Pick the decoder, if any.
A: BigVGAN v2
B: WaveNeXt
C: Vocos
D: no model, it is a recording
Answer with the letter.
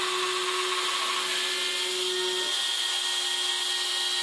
D